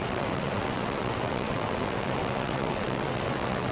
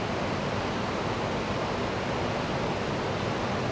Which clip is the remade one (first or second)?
first